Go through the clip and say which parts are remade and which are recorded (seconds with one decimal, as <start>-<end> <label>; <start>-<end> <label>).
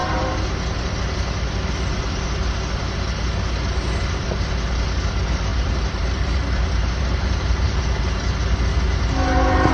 0.0-5.5 recorded; 5.5-7.8 remade; 7.8-9.7 recorded